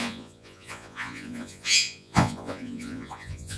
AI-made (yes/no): yes